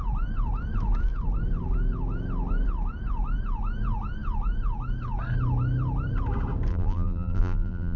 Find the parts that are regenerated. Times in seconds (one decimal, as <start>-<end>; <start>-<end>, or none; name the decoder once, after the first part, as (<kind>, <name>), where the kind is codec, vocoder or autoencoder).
6.7-8.0 (vocoder, BigVGAN v2)